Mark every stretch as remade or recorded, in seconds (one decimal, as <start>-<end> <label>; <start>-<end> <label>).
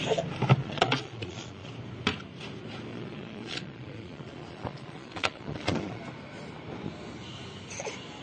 0.0-0.6 recorded; 0.6-1.7 remade; 1.7-2.9 recorded; 2.9-6.0 remade; 6.0-8.2 recorded